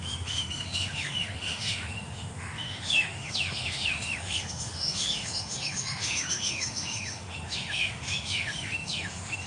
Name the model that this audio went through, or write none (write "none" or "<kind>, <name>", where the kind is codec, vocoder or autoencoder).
autoencoder, DAC-VAE